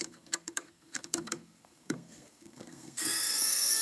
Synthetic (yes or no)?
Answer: yes